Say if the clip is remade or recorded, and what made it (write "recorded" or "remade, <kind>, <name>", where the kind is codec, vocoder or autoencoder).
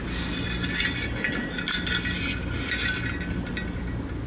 recorded